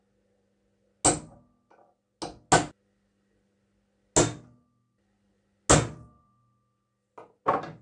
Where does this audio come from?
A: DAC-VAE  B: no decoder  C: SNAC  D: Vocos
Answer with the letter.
B